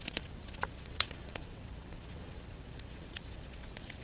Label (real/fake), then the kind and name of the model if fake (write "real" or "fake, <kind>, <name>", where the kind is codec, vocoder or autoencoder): fake, vocoder, WaveNeXt